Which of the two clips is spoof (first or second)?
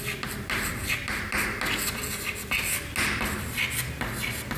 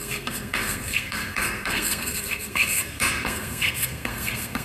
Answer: second